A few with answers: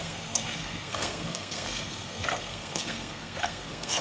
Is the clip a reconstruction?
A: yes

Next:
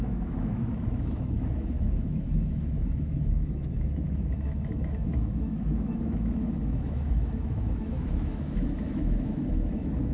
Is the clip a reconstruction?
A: yes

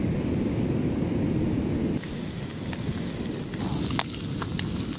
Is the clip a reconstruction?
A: no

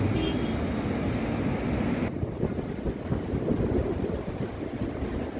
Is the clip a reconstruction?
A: no